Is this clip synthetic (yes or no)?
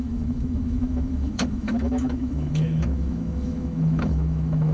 yes